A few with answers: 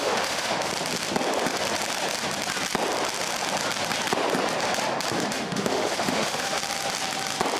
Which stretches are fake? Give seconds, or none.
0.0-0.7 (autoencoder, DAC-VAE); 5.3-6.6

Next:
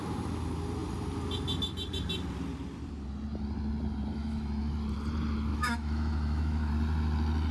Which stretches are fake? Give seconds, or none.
4.1-4.7 (autoencoder, DAC-VAE); 5.5-6.7

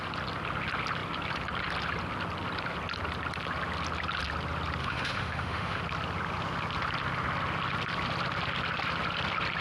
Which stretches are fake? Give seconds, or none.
4.8-5.8 (autoencoder, DAC-VAE)

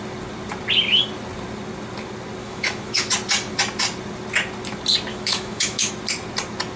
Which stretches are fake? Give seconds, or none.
2.4-3.1 (autoencoder, DAC-VAE); 5.1-5.9

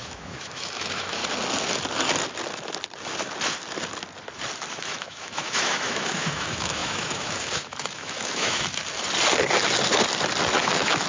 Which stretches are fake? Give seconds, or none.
0.0-1.2 (autoencoder, DAC-VAE); 4.7-8.8; 10.6-11.1

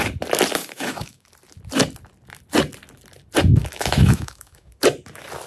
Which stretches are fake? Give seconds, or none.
0.6-1.3 (autoencoder, DAC-VAE); 3.6-4.8

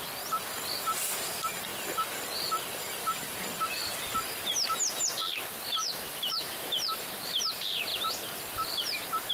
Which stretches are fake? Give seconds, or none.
5.8-6.7 (autoencoder, DAC-VAE)

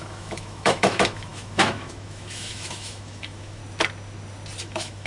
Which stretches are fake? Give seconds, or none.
0.0-3.6 (autoencoder, DAC-VAE); 4.6-5.1